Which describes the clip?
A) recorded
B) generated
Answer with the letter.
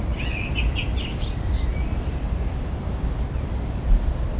A